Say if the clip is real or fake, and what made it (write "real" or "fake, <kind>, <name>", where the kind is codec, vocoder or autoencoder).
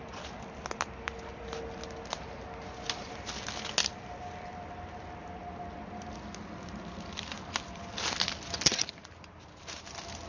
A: real